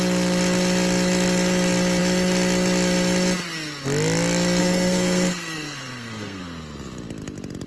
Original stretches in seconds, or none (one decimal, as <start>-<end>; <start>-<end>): 0.0-4.6; 6.4-7.7